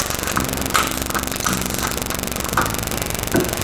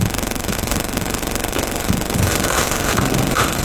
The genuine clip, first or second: first